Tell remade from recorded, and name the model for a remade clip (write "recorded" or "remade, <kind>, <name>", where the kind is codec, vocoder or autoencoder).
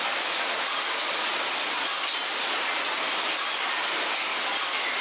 recorded